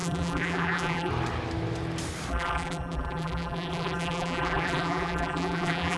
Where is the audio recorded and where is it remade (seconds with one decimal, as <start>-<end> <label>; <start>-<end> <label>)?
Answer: 0.0-1.1 remade; 1.1-2.3 recorded; 2.3-6.0 remade